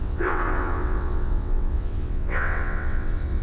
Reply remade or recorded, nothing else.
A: remade